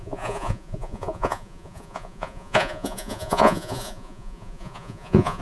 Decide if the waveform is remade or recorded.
remade